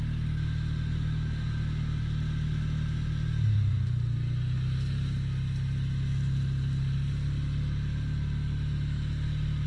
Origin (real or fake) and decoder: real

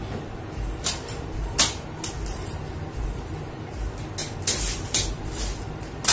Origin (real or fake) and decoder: real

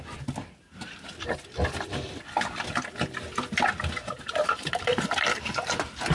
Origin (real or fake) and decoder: real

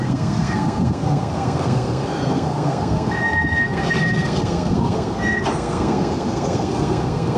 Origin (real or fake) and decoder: fake, codec, SNAC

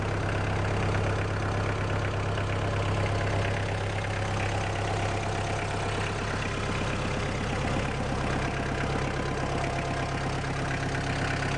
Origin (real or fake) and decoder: real